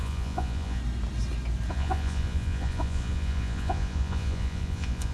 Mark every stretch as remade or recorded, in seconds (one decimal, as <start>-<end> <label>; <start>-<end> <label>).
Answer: 0.0-0.8 remade; 0.8-1.7 recorded; 1.7-5.1 remade

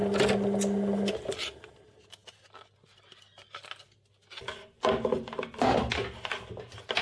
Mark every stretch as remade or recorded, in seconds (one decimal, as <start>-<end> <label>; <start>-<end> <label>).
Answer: 0.0-7.0 recorded

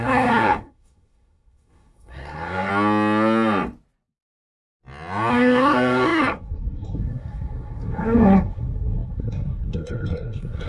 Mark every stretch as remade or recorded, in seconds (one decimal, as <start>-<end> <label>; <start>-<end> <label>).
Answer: 0.0-2.7 remade; 2.7-5.3 recorded; 5.3-10.7 remade

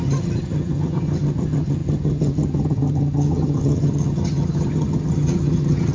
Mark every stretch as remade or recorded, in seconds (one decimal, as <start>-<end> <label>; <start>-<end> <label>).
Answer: 0.0-5.9 remade

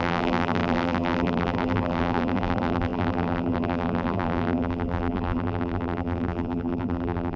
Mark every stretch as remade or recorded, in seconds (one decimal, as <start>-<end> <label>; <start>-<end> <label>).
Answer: 0.0-7.4 remade

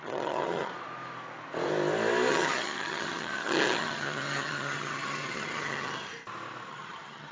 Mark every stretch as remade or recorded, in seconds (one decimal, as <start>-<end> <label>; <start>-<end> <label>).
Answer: 0.0-0.7 remade; 0.7-2.3 recorded; 2.3-6.1 remade; 6.1-6.7 recorded; 6.7-7.3 remade

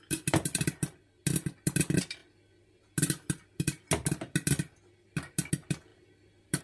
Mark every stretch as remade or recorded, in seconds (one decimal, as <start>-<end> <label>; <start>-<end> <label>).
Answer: 0.0-6.6 recorded